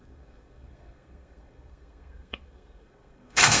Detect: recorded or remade remade